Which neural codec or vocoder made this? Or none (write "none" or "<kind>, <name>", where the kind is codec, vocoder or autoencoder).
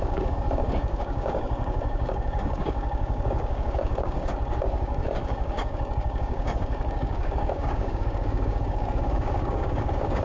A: codec, DAC